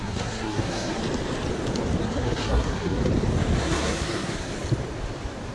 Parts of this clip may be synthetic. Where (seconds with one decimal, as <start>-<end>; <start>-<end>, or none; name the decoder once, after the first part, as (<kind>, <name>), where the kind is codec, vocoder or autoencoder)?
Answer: 0.0-1.0 (codec, SNAC); 2.0-3.0; 3.6-4.5